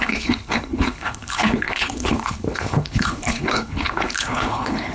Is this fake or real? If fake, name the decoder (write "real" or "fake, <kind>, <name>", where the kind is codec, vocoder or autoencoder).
fake, codec, HILCodec